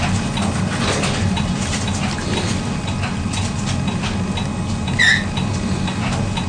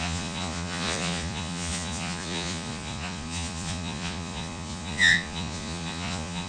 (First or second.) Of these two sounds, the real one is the first